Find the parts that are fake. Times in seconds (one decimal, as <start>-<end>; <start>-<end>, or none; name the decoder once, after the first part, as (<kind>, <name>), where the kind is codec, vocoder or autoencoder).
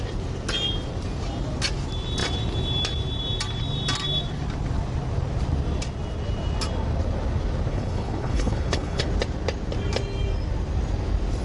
7.7-9.1 (codec, HILCodec)